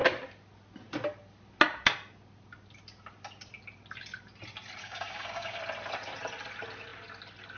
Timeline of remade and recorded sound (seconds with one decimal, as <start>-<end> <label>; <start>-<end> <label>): 0.0-4.8 recorded; 4.8-5.6 remade; 5.6-7.6 recorded